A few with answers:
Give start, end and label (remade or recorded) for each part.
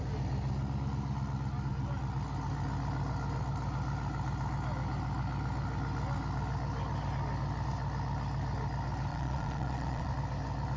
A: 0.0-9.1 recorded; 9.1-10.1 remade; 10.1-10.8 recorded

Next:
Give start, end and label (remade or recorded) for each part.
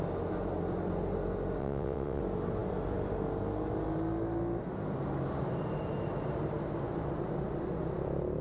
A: 0.0-1.6 recorded; 1.6-2.2 remade; 2.2-8.4 recorded